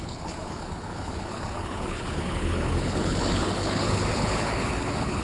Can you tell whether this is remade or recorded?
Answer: remade